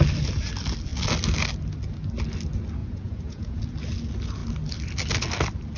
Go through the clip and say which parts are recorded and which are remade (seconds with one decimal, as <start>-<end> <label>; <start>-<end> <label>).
0.0-2.8 recorded; 2.8-3.6 remade; 3.6-5.8 recorded